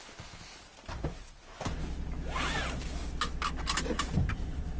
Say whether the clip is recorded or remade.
recorded